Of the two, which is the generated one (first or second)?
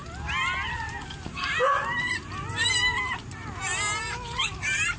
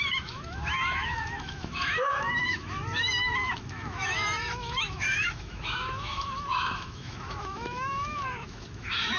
second